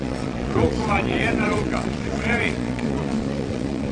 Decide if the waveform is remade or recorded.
remade